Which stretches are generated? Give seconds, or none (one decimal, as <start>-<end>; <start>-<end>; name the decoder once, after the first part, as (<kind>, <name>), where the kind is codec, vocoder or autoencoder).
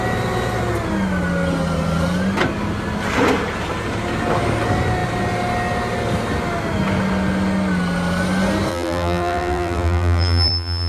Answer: 8.7-10.9 (vocoder, BigVGAN v2)